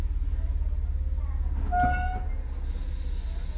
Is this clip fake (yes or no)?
no